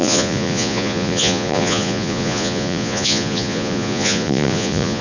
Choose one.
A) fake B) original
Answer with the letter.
A